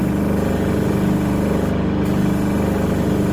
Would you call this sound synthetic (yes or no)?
no